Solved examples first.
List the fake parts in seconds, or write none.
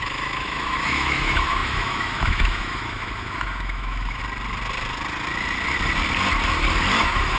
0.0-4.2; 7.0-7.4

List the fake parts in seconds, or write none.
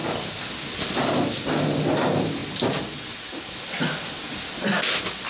none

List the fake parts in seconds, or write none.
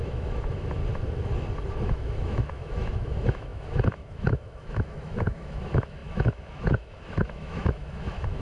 0.0-0.8; 1.7-8.4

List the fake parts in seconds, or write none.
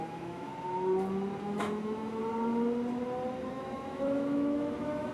0.0-0.5; 1.4-2.2; 3.5-5.1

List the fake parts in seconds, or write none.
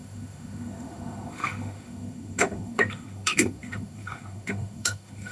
0.0-5.3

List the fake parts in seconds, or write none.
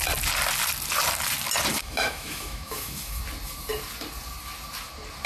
1.7-3.2